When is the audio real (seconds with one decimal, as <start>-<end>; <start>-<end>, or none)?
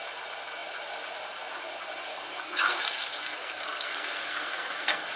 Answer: 0.0-2.1